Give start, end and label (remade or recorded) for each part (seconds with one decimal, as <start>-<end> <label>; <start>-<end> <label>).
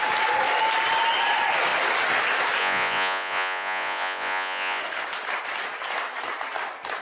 0.0-2.6 recorded; 2.6-4.8 remade; 4.8-7.0 recorded